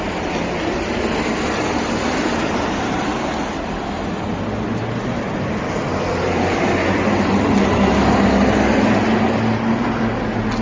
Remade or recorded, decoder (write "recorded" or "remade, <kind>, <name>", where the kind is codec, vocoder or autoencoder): recorded